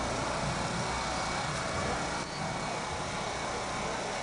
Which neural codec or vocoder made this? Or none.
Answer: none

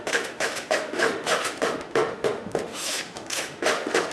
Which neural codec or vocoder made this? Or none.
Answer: autoencoder, DAC-VAE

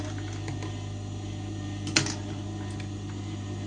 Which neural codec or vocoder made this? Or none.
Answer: none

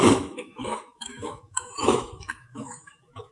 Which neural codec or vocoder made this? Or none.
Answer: autoencoder, DAC-VAE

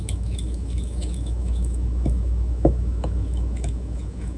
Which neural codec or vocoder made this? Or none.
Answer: autoencoder, DAC-VAE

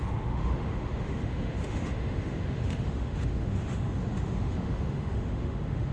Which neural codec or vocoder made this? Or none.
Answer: autoencoder, DAC-VAE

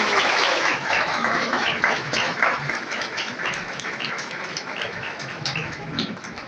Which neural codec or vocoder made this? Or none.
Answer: autoencoder, DAC-VAE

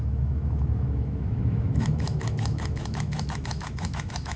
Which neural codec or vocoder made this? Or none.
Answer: autoencoder, DAC-VAE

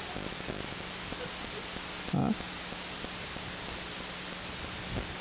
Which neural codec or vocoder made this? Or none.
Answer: none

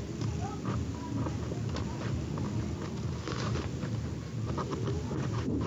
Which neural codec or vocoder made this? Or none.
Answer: none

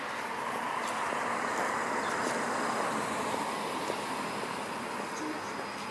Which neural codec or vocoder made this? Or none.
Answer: none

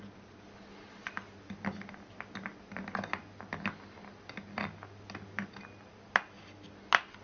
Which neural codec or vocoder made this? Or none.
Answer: none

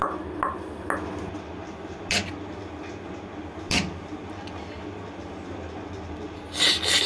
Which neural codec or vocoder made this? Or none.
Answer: none